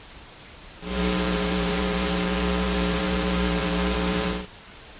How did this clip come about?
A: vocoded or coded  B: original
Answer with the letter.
A